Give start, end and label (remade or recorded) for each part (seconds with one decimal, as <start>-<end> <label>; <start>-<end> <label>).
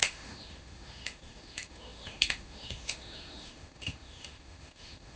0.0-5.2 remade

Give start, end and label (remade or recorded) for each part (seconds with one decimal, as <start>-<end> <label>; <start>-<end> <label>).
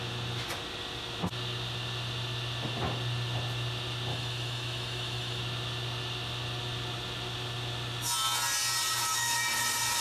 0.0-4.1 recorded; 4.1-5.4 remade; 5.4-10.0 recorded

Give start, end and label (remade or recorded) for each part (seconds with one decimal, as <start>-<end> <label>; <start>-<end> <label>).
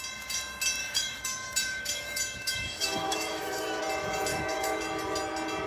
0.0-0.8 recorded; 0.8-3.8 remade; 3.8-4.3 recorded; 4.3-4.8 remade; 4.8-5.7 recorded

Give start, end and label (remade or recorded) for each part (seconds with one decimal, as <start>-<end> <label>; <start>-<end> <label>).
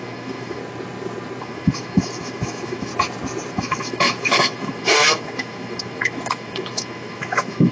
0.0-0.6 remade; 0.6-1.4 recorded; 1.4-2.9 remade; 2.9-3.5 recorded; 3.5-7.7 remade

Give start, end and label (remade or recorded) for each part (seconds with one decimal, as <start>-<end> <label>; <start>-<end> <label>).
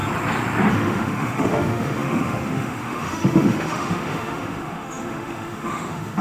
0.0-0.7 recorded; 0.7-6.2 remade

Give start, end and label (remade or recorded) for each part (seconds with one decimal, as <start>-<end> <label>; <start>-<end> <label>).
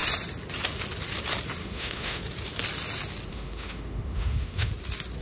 0.0-1.6 recorded; 1.6-2.2 remade; 2.2-3.3 recorded; 3.3-4.7 remade; 4.7-5.2 recorded